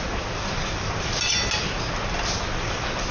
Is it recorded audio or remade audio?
recorded